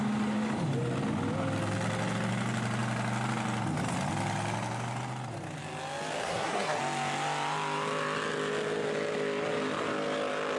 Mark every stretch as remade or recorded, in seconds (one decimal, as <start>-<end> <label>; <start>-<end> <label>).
0.0-6.2 recorded; 6.2-6.8 remade; 6.8-10.6 recorded